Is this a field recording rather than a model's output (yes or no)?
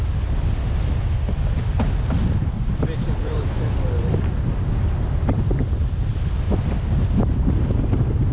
yes